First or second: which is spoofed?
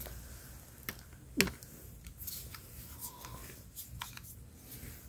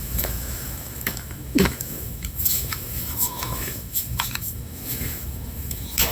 second